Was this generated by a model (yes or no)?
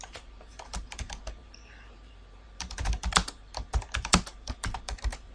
yes